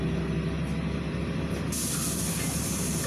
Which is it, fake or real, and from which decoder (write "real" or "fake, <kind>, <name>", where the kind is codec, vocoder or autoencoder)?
real